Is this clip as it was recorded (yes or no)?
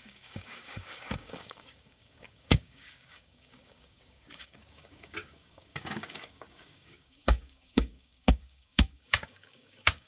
no